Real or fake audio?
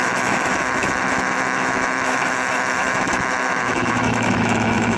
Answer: fake